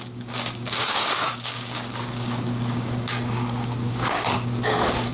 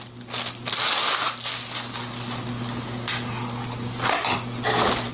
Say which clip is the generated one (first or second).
first